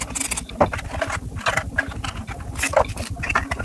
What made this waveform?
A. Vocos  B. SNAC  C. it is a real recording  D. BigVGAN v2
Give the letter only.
C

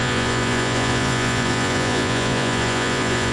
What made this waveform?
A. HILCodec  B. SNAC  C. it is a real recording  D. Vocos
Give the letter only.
D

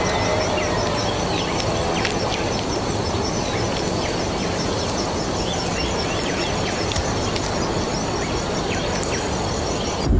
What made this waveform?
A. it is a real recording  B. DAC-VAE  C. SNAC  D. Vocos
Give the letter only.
A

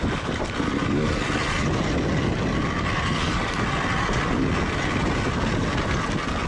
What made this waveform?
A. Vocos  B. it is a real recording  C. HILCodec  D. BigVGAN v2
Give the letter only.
B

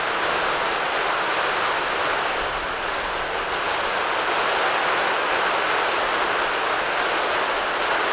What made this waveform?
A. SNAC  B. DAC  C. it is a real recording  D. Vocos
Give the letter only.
C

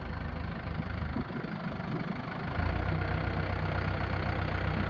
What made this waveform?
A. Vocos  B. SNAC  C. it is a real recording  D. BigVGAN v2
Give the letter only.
C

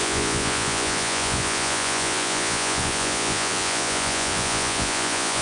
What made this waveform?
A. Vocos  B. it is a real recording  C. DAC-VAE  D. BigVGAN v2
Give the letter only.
A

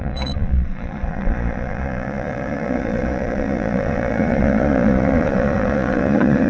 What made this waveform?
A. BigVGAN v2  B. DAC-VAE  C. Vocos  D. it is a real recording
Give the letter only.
C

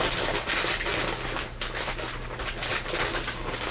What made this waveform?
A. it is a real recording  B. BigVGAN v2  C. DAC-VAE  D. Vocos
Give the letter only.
A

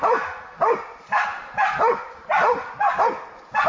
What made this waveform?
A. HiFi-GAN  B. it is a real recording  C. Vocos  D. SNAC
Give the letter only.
B